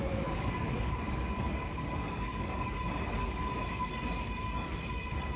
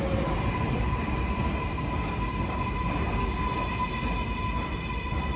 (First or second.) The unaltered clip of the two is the second